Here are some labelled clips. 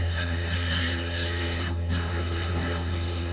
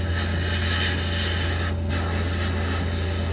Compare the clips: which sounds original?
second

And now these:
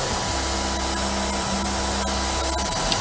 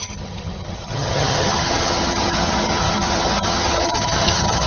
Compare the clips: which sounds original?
first